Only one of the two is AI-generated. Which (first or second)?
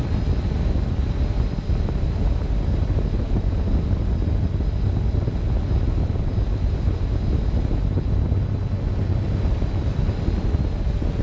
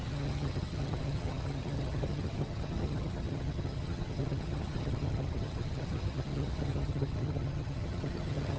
second